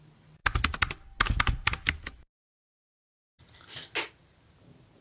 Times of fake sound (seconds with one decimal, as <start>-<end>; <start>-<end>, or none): none